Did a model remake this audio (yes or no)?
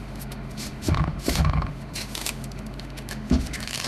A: yes